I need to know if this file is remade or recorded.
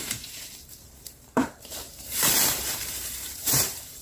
remade